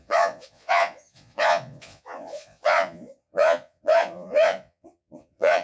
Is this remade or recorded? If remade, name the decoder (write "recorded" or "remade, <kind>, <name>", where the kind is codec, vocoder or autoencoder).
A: remade, vocoder, Vocos